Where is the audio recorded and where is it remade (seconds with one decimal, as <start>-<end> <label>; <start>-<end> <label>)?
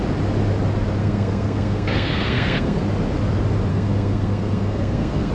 0.0-1.0 recorded; 1.0-2.8 remade; 2.8-3.7 recorded; 3.7-5.3 remade